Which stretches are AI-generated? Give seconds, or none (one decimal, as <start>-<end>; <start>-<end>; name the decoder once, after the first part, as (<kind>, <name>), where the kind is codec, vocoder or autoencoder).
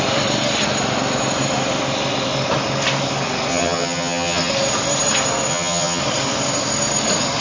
3.5-4.5 (vocoder, HiFi-GAN); 5.5-6.0